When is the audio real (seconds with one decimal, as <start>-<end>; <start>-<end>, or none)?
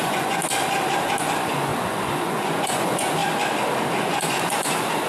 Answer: 0.4-1.2; 3.2-3.9